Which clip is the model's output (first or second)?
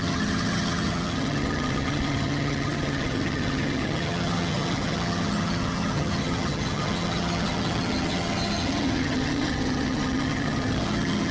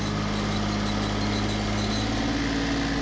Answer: first